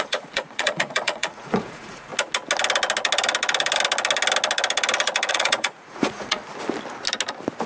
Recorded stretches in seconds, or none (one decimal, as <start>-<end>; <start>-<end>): 2.1-5.3; 6.4-7.7